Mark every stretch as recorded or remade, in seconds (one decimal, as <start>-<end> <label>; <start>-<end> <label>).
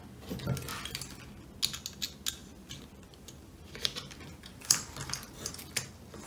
0.0-2.4 recorded; 2.4-5.5 remade; 5.5-6.3 recorded